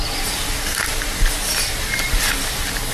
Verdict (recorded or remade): remade